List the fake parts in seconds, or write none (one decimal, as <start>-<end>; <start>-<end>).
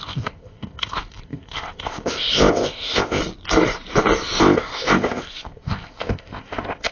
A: 0.0-3.2; 4.4-6.9